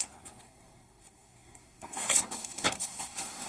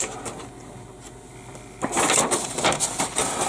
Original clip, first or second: second